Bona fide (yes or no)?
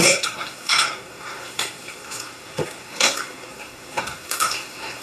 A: no